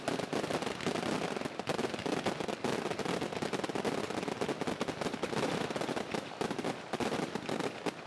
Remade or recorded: recorded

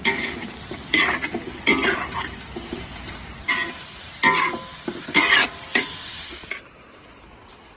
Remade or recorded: recorded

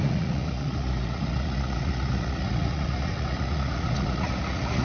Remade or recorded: remade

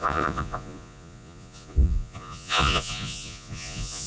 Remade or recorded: remade